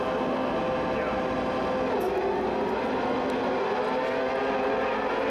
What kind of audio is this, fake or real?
real